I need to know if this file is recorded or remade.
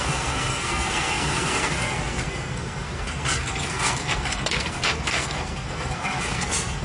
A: remade